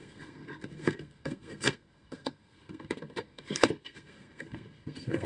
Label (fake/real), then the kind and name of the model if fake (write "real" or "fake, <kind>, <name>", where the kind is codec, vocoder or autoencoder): fake, codec, SNAC